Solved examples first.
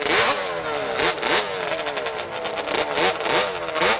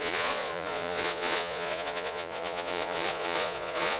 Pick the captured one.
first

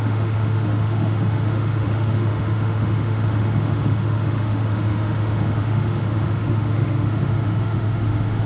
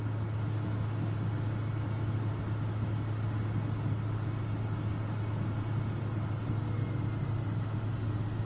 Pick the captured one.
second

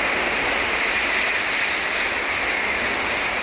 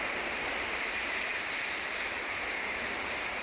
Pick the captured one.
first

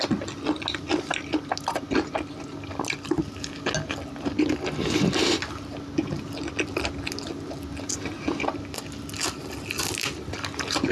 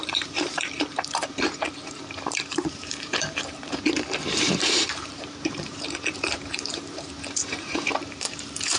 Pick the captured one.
first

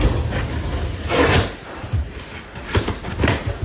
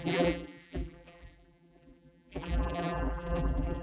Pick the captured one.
first